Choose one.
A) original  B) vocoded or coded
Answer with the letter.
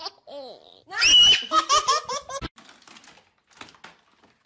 A